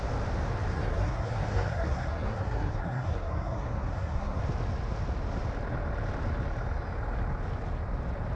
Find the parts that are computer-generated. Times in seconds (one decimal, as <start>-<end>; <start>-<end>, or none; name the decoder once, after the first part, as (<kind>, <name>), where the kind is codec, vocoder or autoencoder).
0.7-4.4 (codec, SNAC)